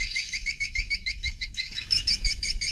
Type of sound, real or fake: fake